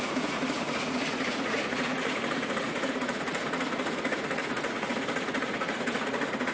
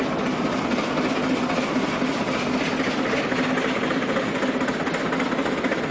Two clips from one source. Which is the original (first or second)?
second